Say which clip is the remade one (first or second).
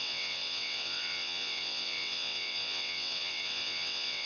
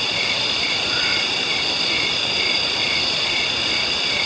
first